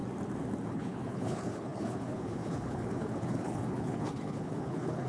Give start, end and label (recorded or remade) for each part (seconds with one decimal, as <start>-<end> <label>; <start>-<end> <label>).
0.0-0.7 recorded; 0.7-5.1 remade